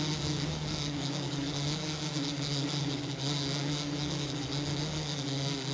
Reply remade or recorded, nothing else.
remade